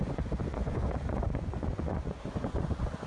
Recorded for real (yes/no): no